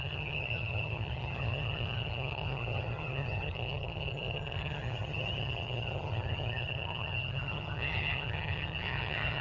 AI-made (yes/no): yes